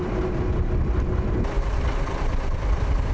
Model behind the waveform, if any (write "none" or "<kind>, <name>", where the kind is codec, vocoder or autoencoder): none